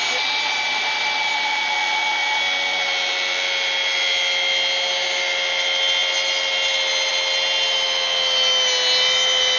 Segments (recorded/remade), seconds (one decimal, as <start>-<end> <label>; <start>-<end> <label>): 0.0-9.6 recorded